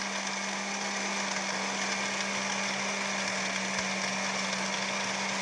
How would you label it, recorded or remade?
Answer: recorded